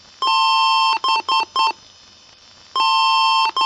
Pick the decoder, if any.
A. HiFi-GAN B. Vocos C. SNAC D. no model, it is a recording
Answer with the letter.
D